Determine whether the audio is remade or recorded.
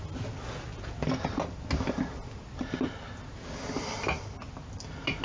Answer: recorded